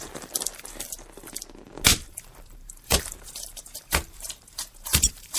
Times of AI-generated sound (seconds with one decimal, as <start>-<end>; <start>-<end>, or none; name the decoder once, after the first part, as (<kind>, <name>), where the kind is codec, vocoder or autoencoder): 1.9-5.4 (vocoder, BigVGAN v2)

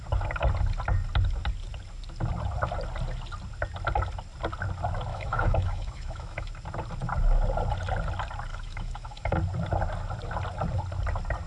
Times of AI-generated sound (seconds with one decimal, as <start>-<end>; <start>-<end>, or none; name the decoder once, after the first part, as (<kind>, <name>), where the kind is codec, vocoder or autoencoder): 5.1-6.5 (autoencoder, DAC-VAE); 8.5-9.3

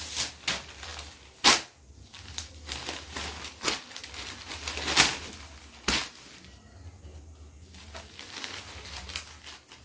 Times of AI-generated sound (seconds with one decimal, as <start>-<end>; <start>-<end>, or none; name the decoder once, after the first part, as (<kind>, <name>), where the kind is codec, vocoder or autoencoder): none